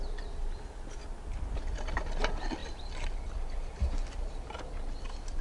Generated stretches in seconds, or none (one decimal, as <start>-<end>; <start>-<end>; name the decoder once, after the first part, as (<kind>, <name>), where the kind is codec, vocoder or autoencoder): none